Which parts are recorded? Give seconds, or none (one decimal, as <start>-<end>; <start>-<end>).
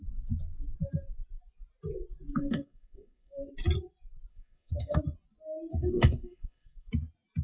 0.0-2.4; 3.5-4.3; 5.0-5.7; 6.9-7.4